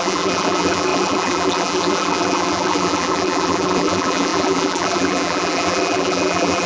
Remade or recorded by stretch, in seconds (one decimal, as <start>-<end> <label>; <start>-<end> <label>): 0.0-6.7 remade